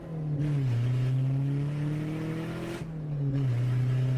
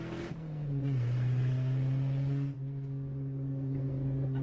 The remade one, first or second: second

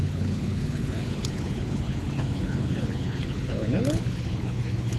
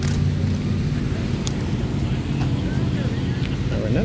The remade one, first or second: first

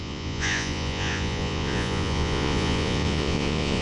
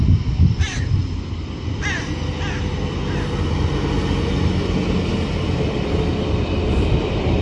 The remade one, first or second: first